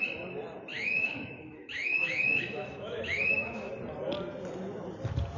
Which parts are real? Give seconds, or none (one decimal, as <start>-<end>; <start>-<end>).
0.0-0.7; 3.7-5.4